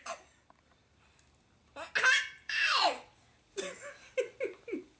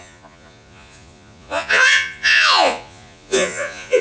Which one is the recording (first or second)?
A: first